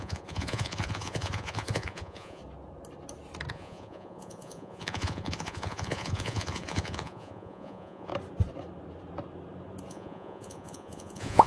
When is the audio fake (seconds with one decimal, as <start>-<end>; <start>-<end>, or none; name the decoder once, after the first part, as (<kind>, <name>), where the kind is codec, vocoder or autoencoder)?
0.0-2.4 (vocoder, Vocos); 3.5-8.1; 9.9-11.5